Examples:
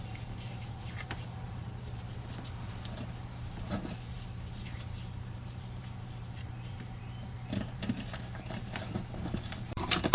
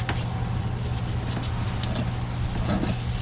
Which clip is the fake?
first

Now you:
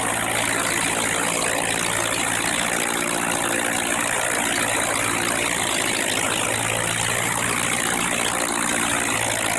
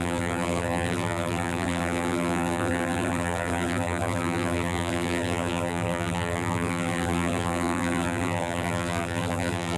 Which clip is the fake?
second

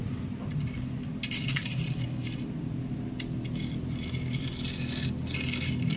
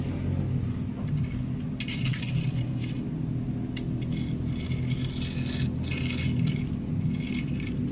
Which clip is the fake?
first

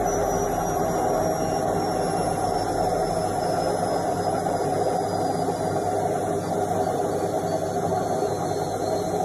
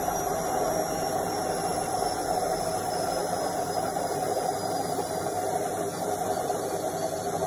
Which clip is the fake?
second